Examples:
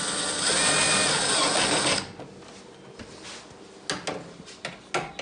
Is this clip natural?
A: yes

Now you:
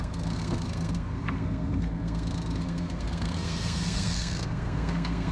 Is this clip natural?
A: no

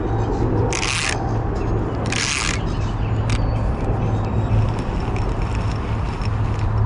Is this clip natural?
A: yes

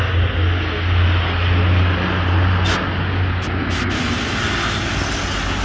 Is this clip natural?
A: yes